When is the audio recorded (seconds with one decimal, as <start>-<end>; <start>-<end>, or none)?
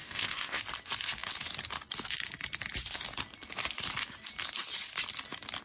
0.6-5.6